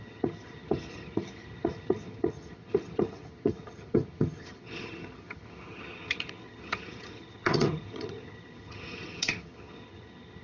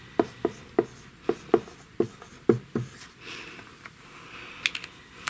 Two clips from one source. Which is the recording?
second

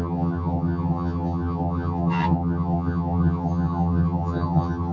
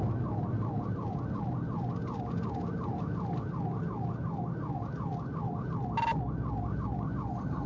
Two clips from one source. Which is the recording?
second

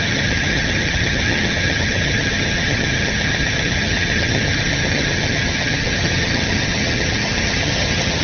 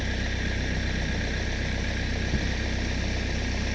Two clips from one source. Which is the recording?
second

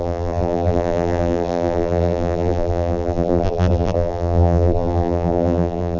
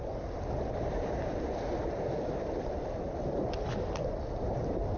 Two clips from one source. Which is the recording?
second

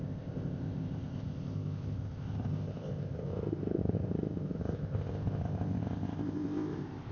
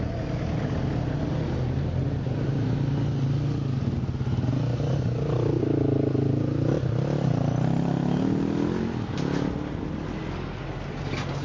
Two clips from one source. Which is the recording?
second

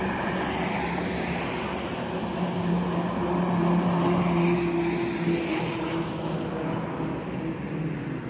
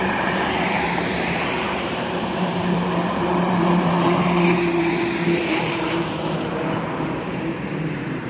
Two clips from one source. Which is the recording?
first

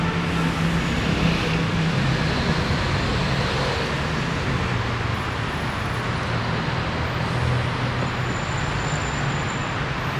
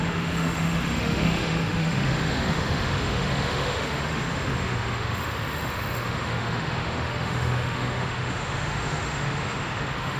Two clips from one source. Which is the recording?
first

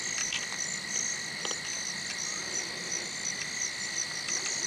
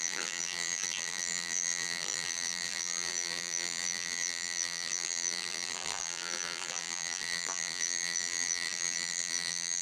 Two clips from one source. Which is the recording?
first